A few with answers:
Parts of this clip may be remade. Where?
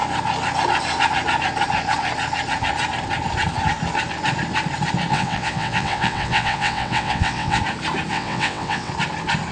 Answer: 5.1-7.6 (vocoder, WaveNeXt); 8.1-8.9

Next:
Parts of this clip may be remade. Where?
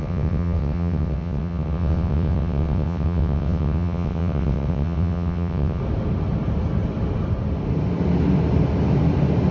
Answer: 0.0-5.8 (vocoder, WaveNeXt)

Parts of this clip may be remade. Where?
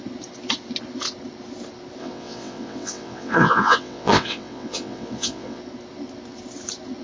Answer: 2.0-5.6 (vocoder, WaveNeXt)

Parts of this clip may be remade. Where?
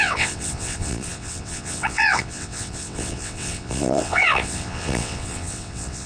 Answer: 0.0-6.1 (vocoder, WaveNeXt)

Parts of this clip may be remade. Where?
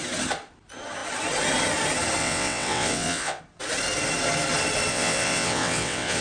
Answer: 2.2-3.4 (vocoder, WaveNeXt); 4.9-6.2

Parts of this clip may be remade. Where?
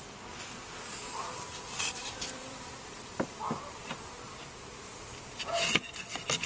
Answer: none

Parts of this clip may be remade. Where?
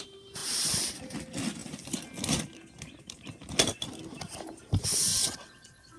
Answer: 5.1-6.0 (vocoder, WaveNeXt)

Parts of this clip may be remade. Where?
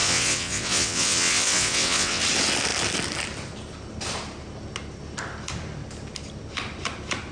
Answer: 0.0-2.2 (vocoder, WaveNeXt)